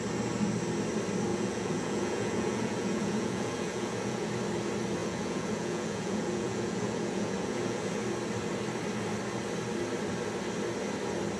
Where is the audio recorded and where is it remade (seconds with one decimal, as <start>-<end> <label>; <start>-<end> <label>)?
0.0-1.3 recorded; 1.3-4.3 remade; 4.3-5.0 recorded; 5.0-7.9 remade; 7.9-11.4 recorded